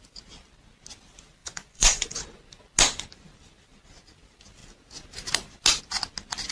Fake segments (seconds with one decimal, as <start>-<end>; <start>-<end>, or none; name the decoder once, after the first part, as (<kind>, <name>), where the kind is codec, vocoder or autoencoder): 1.4-2.2 (vocoder, Vocos)